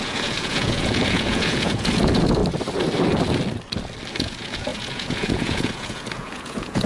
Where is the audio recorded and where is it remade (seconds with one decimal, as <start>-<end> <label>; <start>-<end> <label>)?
0.0-2.4 remade; 2.4-4.1 recorded; 4.1-6.9 remade